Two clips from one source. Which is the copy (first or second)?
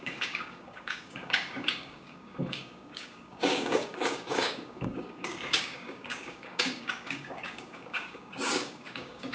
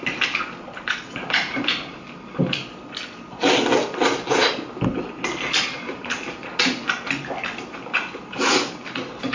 first